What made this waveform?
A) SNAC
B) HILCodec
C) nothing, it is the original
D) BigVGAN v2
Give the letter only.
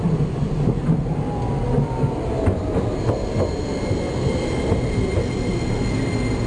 C